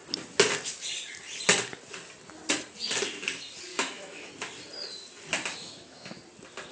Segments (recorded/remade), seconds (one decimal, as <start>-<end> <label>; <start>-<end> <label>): 0.0-3.7 recorded; 3.7-4.3 remade; 4.3-5.6 recorded; 5.6-6.2 remade; 6.2-6.7 recorded